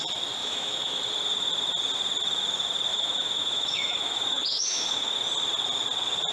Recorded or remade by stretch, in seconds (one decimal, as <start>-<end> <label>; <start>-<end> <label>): 0.0-0.4 recorded; 0.4-1.0 remade; 1.0-2.9 recorded; 2.9-5.1 remade; 5.1-6.3 recorded